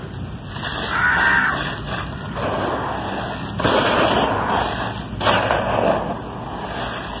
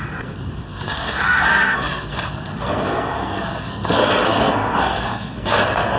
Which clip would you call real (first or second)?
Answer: first